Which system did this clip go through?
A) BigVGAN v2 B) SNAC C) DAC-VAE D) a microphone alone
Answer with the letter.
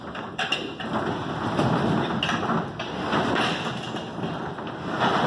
D